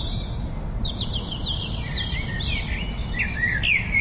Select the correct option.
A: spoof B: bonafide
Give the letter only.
B